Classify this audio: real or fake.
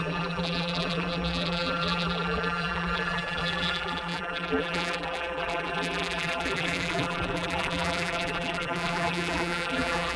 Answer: fake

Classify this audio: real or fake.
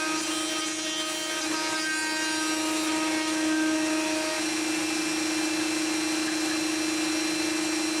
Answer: real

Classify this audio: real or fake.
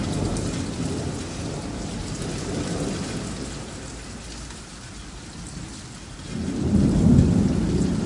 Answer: real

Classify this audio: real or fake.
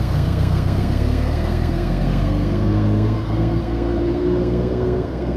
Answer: fake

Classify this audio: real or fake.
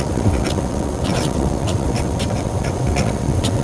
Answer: fake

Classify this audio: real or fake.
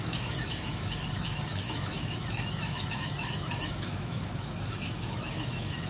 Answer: fake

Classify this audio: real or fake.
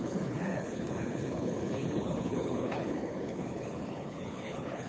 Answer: fake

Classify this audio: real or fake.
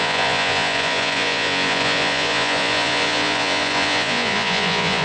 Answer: fake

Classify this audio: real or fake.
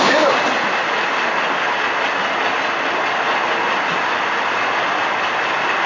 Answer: real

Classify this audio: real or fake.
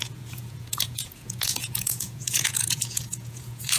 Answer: fake